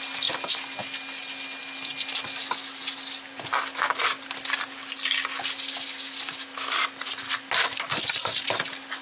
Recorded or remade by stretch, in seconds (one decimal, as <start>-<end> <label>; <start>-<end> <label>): 0.0-9.0 recorded